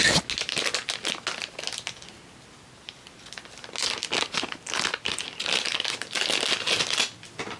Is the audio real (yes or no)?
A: yes